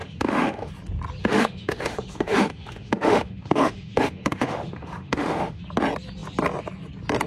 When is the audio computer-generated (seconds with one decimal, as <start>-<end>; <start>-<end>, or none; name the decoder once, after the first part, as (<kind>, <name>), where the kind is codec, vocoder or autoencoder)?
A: 0.0-0.7 (autoencoder, DAC-VAE); 1.2-5.6